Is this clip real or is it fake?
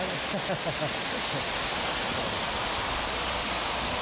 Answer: real